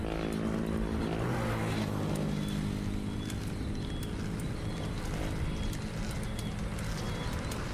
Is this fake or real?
real